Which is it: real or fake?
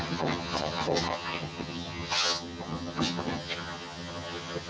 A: fake